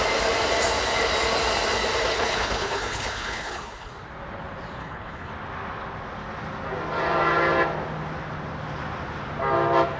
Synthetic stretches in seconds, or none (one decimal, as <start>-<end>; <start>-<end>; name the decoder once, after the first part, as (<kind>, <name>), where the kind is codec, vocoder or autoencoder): 2.1-3.9 (codec, HILCodec); 4.8-5.3